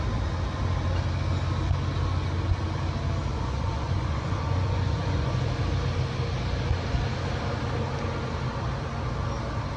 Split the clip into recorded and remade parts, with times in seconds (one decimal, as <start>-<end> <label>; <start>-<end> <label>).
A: 0.0-3.3 recorded; 3.3-5.5 remade; 5.5-9.8 recorded